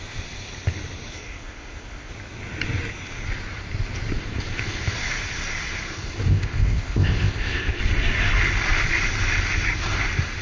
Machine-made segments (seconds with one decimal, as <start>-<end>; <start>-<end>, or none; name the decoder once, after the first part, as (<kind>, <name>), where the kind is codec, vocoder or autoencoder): 1.1-2.1 (codec, ZipCodec); 6.3-7.8